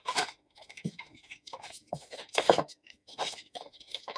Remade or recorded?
remade